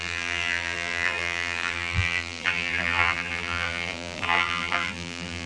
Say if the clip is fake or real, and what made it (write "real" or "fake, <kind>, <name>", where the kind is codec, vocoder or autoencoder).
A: fake, vocoder, BigVGAN v2